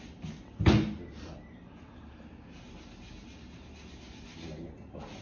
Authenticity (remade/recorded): recorded